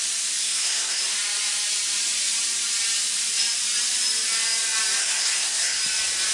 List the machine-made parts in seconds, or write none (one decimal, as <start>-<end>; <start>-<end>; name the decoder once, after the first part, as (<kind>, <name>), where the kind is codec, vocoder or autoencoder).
0.4-1.0 (codec, SNAC); 5.0-5.8